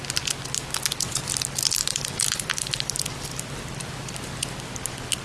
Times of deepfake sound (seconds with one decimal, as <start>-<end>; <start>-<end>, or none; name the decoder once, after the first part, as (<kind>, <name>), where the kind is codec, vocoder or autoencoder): 1.8-3.9 (vocoder, BigVGAN v2)